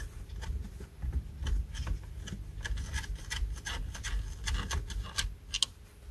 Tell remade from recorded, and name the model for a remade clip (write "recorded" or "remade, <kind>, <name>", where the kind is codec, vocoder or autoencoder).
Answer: recorded